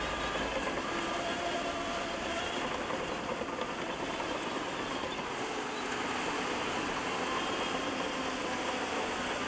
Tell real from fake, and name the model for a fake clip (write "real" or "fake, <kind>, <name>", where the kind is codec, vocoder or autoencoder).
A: real